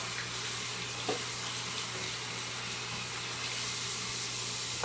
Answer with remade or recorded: recorded